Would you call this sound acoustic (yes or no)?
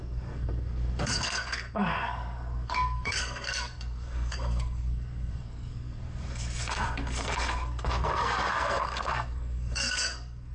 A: no